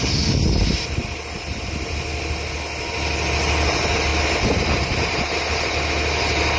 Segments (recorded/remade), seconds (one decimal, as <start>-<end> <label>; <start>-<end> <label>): 0.0-6.6 recorded